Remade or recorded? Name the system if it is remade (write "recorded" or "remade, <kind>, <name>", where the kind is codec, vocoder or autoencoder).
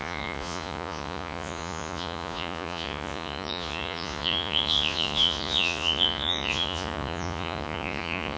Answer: remade, vocoder, Vocos